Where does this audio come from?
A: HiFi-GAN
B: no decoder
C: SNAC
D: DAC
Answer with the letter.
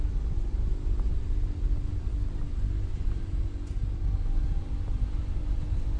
B